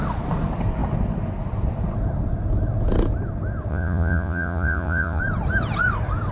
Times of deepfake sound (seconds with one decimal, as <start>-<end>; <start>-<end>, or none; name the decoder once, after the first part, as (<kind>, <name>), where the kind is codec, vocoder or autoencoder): 3.7-5.2 (vocoder, Vocos)